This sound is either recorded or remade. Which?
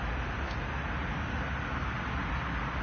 recorded